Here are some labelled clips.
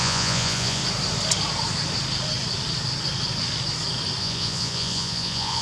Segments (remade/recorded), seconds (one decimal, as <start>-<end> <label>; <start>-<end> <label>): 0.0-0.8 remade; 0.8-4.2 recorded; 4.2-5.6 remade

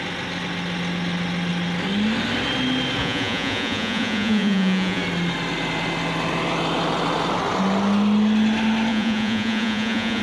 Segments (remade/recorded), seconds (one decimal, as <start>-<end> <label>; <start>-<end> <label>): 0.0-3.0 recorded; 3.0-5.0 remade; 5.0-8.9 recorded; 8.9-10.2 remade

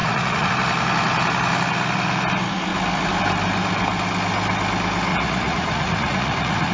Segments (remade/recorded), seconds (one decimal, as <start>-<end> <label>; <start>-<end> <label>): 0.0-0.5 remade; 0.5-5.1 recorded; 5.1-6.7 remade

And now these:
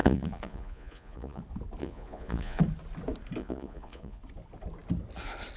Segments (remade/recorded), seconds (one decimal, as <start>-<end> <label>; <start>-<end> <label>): 0.0-1.4 remade; 1.4-1.8 recorded; 1.8-2.6 remade; 2.6-3.4 recorded; 3.4-4.2 remade; 4.2-5.6 recorded

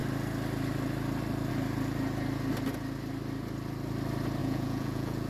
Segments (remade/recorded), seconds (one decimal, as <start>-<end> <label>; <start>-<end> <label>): 0.0-4.4 recorded; 4.4-5.3 remade

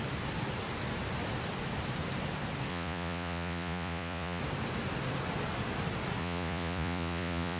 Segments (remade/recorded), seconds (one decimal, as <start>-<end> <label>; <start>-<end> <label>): 0.0-2.7 recorded; 2.7-4.4 remade; 4.4-6.2 recorded; 6.2-7.6 remade

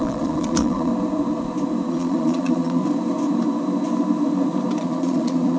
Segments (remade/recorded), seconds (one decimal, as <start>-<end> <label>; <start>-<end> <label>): 0.0-0.9 remade; 0.9-1.9 recorded; 1.9-2.8 remade; 2.8-4.8 recorded; 4.8-5.6 remade

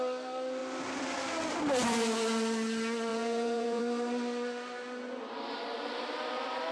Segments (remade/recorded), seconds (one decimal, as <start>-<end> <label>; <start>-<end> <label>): 0.0-3.1 recorded; 3.1-3.8 remade; 3.8-6.7 recorded